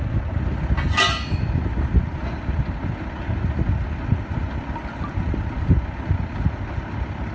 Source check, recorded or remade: recorded